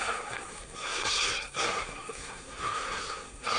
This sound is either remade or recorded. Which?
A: remade